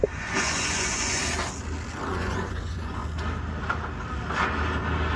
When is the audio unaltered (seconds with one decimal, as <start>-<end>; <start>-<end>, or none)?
1.2-2.1; 3.0-5.2

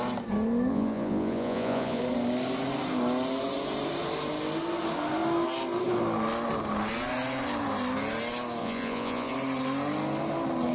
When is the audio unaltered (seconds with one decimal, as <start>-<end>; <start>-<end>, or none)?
0.0-0.7; 2.0-8.6; 9.3-10.7

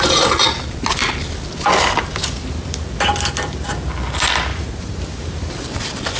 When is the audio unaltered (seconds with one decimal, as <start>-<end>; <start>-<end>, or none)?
0.0-4.5; 5.0-6.2

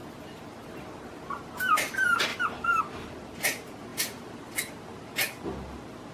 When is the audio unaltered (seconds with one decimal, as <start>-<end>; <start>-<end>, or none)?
0.0-6.1